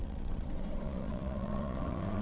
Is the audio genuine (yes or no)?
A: no